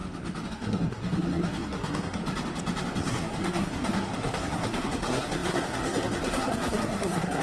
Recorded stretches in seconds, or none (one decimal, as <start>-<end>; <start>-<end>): 0.0-0.5; 2.2-3.1